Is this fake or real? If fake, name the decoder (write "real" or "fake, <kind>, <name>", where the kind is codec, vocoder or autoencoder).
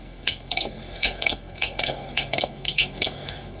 fake, codec, SNAC